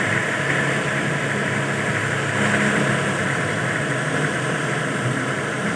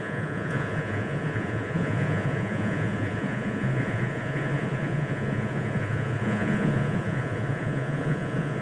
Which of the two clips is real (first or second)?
first